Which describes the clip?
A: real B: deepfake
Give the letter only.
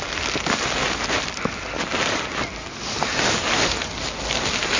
A